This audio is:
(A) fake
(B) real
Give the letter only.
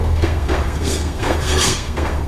A